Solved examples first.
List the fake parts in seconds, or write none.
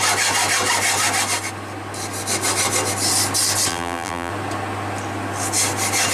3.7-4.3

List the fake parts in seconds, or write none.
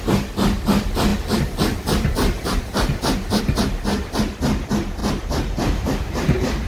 1.1-3.4; 5.0-6.7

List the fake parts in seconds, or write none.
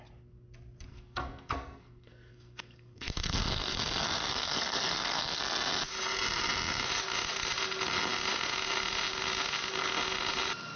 0.9-5.4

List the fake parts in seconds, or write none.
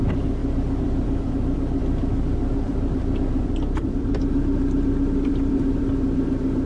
0.4-1.3; 1.8-5.8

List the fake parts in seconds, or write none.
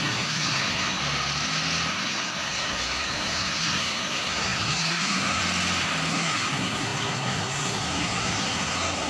0.0-1.0; 1.9-5.4; 6.1-9.1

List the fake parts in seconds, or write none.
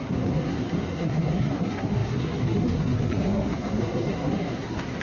0.0-5.0